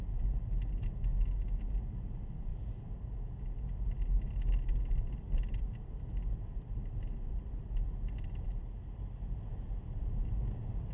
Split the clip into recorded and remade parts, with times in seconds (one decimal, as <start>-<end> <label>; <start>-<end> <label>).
0.0-10.9 recorded